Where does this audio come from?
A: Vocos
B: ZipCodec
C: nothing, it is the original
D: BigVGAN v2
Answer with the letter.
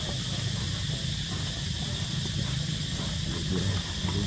D